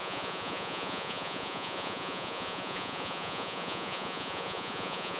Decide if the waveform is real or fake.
fake